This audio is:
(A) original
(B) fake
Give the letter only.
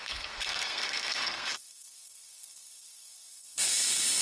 B